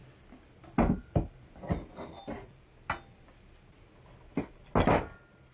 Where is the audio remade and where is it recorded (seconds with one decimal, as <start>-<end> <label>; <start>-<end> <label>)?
0.0-5.5 recorded